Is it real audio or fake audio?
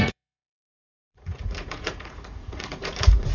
fake